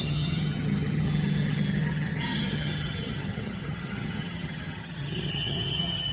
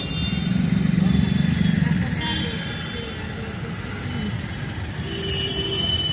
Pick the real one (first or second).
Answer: second